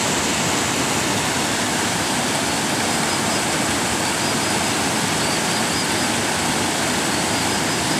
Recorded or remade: recorded